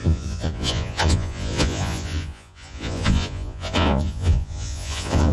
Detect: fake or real fake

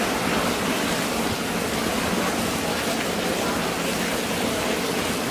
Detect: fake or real real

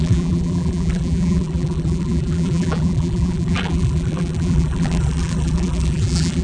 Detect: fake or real fake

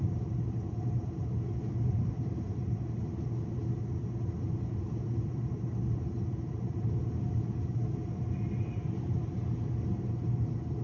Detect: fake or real real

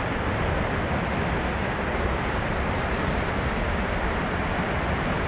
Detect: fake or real real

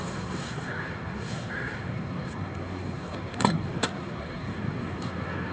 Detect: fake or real fake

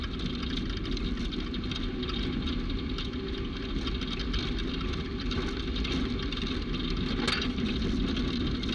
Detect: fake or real real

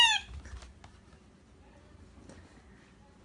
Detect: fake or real real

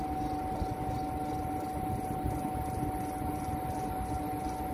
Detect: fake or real real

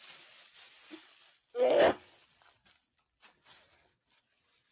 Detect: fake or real real